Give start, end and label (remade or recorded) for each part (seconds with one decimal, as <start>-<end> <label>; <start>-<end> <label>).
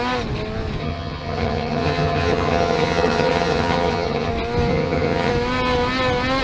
0.0-0.8 recorded; 0.8-4.3 remade; 4.3-4.7 recorded; 4.7-5.3 remade; 5.3-6.4 recorded